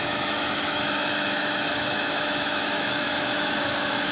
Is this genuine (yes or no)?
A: no